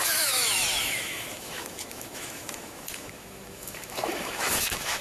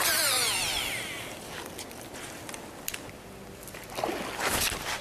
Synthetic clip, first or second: first